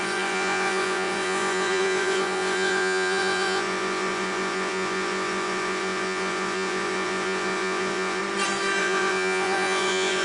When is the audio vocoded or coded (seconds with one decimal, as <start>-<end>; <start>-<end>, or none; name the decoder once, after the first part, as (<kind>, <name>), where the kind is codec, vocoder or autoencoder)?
0.0-8.2 (vocoder, Vocos); 8.8-10.2